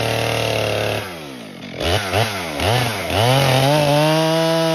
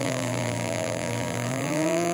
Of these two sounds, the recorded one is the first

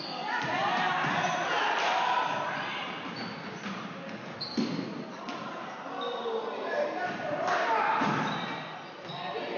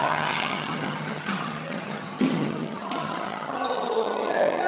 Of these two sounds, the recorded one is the first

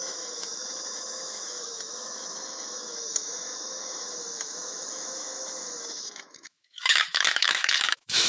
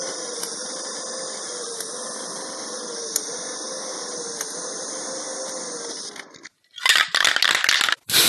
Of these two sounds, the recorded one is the second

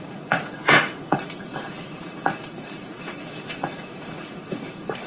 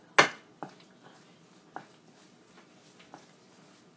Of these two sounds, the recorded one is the second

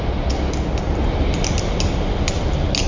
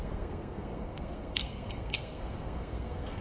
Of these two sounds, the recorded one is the first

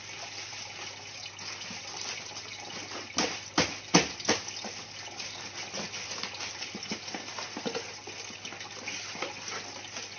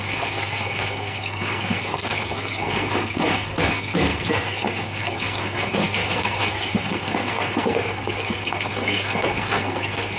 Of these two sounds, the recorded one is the first